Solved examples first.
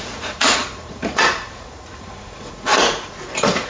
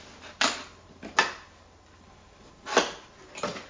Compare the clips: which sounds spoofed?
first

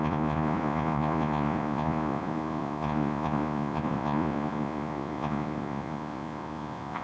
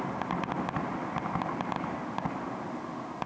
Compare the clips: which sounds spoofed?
first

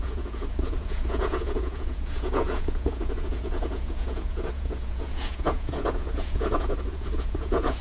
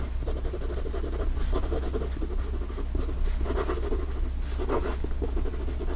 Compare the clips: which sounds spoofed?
first